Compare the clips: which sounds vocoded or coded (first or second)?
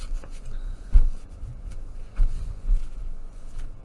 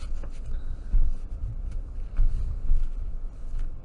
first